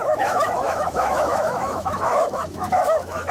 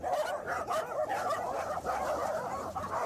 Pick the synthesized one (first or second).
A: first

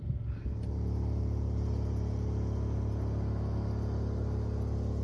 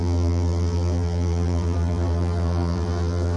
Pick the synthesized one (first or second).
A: second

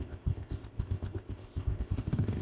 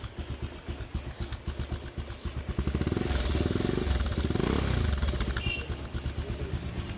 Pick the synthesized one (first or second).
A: first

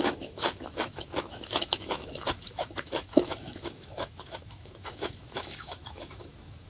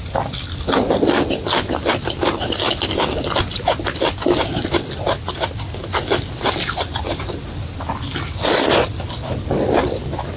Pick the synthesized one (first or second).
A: first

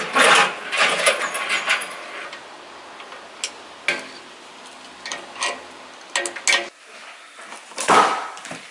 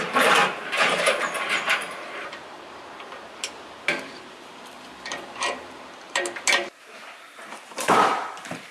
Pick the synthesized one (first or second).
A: second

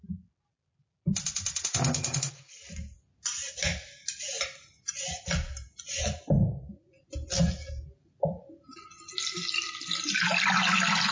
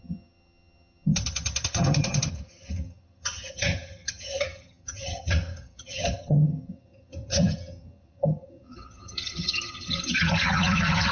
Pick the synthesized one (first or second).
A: second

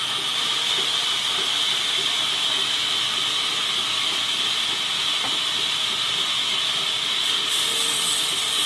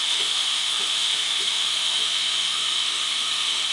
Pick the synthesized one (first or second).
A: second